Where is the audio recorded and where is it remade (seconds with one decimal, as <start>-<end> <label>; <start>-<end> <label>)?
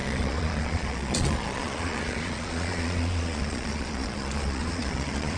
0.0-5.4 remade